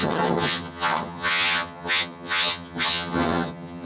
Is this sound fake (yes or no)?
yes